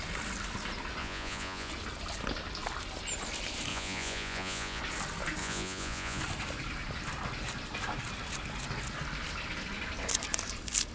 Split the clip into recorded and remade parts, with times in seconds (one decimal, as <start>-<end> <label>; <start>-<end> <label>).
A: 0.0-1.0 recorded; 1.0-1.7 remade; 1.7-3.7 recorded; 3.7-4.8 remade; 4.8-5.4 recorded; 5.4-6.2 remade; 6.2-10.9 recorded